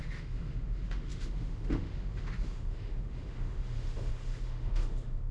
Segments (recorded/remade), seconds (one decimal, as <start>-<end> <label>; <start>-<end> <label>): 0.0-5.3 remade

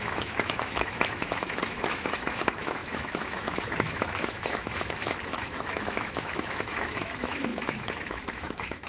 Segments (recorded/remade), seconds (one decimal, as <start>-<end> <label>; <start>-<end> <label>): 0.0-8.9 remade

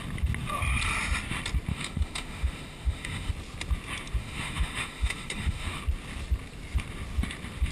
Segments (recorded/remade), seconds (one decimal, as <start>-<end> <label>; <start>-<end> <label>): 0.0-1.7 recorded; 1.7-3.3 remade; 3.3-4.2 recorded; 4.2-5.8 remade; 5.8-7.7 recorded

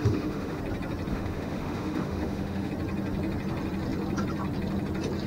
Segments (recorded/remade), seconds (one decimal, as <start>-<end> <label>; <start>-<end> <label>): 0.0-0.6 remade; 0.6-1.1 recorded; 1.1-2.7 remade; 2.7-5.3 recorded

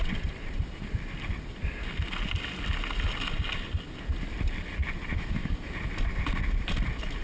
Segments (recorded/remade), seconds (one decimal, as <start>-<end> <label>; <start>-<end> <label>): 0.0-5.1 recorded; 5.1-5.7 remade; 5.7-7.2 recorded